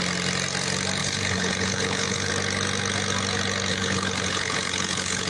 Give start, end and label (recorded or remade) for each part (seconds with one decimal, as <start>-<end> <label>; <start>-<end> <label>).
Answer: 0.0-1.0 recorded; 1.0-2.3 remade; 2.3-3.7 recorded; 3.7-5.3 remade